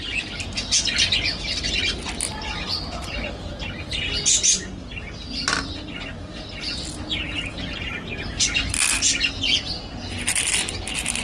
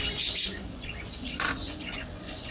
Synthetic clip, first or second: second